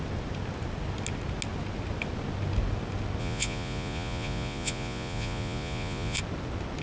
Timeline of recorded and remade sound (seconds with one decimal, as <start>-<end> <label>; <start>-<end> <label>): 0.0-3.2 recorded; 3.2-6.2 remade; 6.2-6.8 recorded